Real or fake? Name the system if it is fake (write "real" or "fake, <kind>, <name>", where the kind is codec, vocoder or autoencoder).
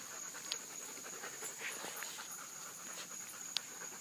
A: real